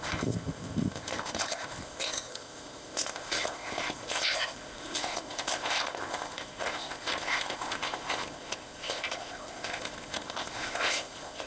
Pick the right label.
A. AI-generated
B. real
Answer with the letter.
A